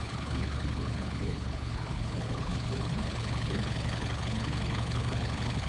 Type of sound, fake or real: fake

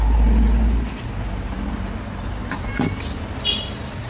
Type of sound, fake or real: real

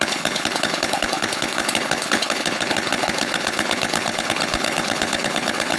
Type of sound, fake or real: fake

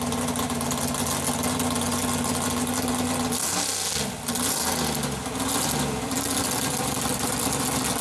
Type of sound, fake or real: real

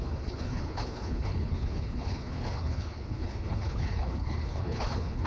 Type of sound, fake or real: fake